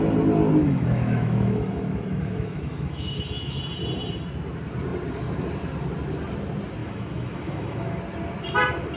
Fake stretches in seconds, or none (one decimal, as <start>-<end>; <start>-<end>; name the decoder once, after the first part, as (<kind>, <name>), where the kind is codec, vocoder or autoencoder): 0.6-3.6 (autoencoder, DAC-VAE); 6.8-8.0